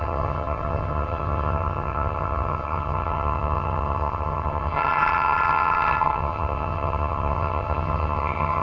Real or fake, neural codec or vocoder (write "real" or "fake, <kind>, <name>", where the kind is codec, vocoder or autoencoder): fake, vocoder, HiFi-GAN